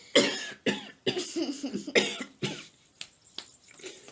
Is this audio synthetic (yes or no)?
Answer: no